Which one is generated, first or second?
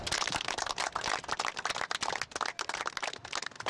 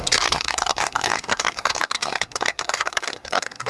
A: second